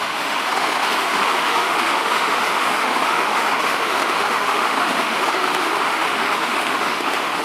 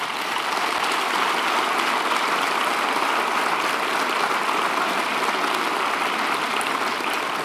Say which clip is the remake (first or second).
first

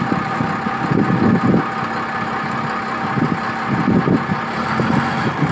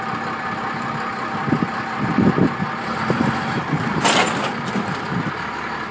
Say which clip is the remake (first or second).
second